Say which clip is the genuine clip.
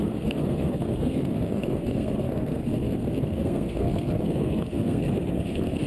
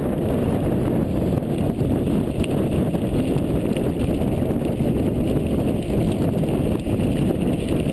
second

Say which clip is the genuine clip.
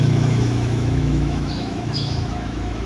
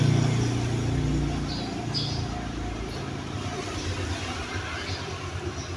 second